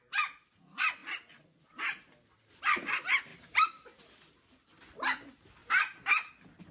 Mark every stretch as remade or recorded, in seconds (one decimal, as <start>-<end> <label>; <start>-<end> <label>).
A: 0.0-3.3 recorded; 3.3-4.9 remade; 4.9-5.6 recorded; 5.6-6.3 remade; 6.3-6.7 recorded